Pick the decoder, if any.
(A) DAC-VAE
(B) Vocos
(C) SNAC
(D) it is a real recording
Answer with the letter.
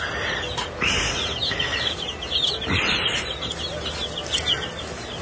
D